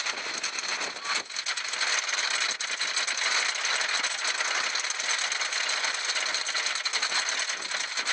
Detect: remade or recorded recorded